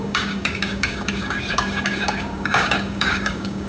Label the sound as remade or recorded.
remade